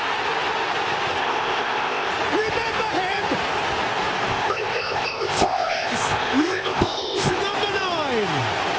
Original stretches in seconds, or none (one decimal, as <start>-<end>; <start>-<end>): 0.0-1.2; 2.1-4.3; 7.4-8.8